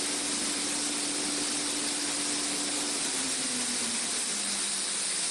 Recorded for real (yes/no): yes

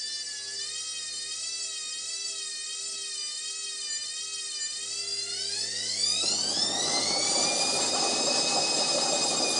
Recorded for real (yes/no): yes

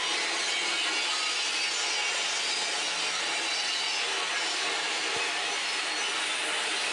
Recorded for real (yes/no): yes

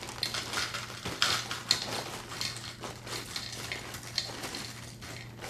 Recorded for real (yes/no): yes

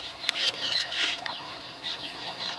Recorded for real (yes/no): no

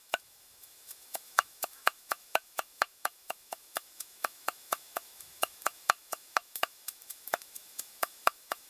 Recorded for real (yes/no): no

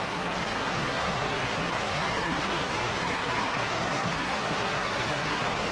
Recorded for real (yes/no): no